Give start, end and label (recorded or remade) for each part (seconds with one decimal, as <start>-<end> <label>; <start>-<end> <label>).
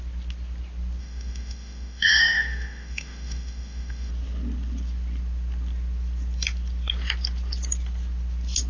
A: 0.0-1.0 recorded; 1.0-4.1 remade; 4.1-8.7 recorded